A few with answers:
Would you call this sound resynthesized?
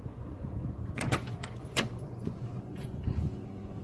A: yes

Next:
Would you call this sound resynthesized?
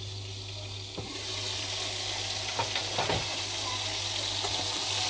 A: no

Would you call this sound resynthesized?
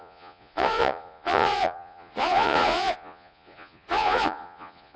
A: yes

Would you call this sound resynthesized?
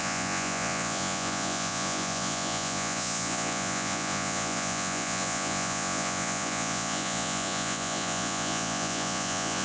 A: yes